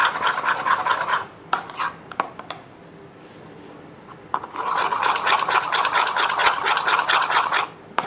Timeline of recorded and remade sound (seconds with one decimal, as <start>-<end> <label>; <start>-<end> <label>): 0.0-8.1 recorded